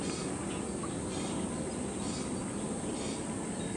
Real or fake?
real